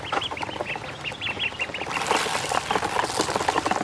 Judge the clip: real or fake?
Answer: real